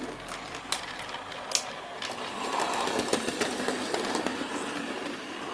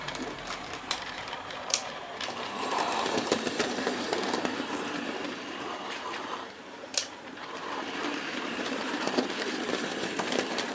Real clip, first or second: first